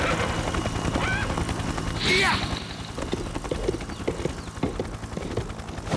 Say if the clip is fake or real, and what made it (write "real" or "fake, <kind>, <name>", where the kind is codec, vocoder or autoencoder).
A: real